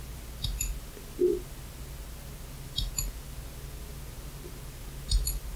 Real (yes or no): yes